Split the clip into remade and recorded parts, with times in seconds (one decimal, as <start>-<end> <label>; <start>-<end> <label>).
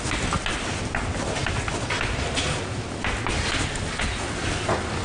0.0-5.0 recorded